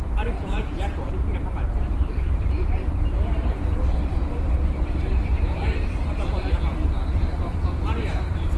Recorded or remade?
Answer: remade